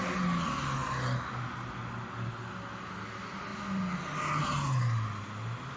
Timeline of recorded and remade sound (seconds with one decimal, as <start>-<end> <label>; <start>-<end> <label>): 0.0-5.8 recorded